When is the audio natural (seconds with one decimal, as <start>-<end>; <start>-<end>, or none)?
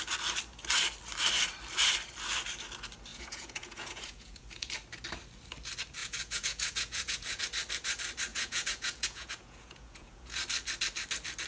0.0-3.1; 4.7-6.0; 7.4-8.3; 10.4-11.5